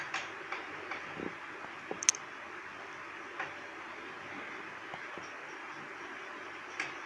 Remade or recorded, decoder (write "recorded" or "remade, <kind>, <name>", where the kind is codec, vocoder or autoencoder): recorded